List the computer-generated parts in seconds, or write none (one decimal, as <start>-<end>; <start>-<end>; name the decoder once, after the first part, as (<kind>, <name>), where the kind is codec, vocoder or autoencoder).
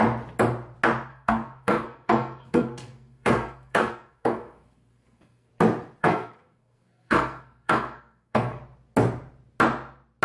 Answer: 1.1-5.5 (codec, SNAC); 6.0-8.6